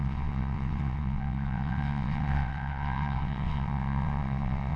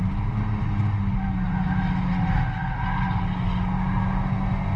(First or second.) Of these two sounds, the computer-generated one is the first